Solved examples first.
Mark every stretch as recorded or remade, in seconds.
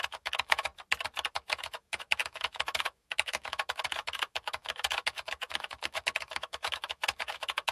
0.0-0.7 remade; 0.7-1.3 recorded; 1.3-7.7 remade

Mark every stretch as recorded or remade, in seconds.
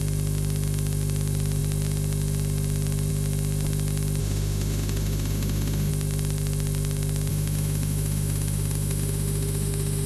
0.0-4.2 recorded; 4.2-5.9 remade; 5.9-7.3 recorded; 7.3-10.1 remade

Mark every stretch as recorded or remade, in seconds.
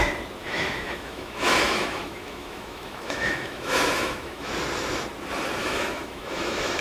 0.0-0.4 recorded; 0.4-4.5 remade; 4.5-5.6 recorded; 5.6-6.8 remade